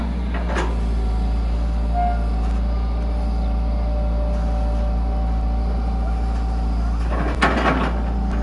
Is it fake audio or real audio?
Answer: real